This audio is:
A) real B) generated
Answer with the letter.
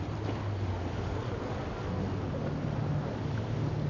A